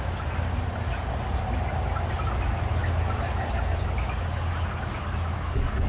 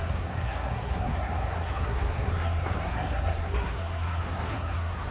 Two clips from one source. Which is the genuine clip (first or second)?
first